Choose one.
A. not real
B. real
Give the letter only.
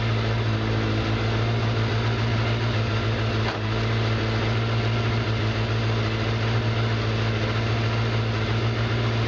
A